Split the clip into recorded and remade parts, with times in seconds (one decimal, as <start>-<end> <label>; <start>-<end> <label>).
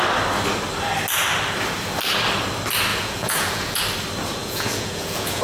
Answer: 0.0-2.9 recorded; 2.9-3.8 remade; 3.8-4.4 recorded; 4.4-5.4 remade